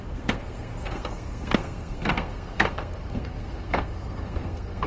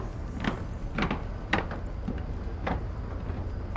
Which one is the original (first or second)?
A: second